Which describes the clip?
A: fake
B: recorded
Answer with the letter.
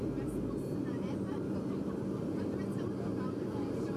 B